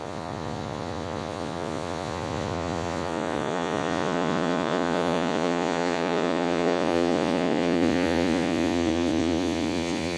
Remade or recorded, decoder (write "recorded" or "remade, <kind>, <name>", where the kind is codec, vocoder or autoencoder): remade, vocoder, Vocos